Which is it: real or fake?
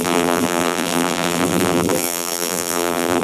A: fake